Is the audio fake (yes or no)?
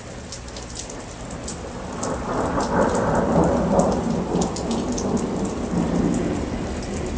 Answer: no